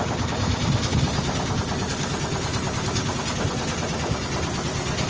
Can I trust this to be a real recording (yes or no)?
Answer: yes